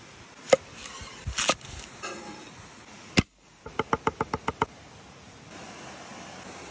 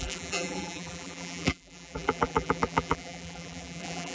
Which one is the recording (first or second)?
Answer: first